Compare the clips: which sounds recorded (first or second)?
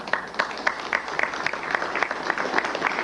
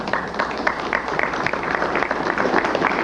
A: first